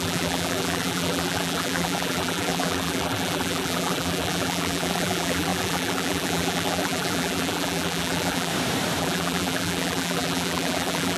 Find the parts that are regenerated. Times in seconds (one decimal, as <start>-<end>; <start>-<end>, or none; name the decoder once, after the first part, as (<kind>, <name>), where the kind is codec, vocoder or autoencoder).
0.0-8.5 (vocoder, BigVGAN v2); 9.0-11.2